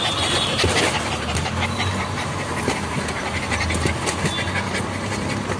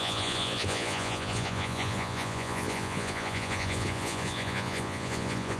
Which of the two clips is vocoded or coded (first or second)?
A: second